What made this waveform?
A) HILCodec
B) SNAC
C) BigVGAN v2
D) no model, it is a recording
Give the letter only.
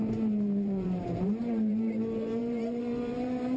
C